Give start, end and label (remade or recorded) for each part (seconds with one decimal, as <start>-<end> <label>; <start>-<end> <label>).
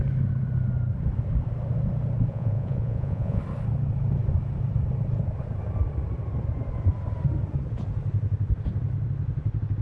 0.0-2.3 recorded; 2.3-3.4 remade; 3.4-9.8 recorded